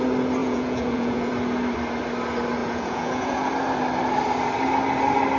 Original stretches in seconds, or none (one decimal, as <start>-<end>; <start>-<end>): 0.0-0.4; 1.3-2.6; 3.5-5.4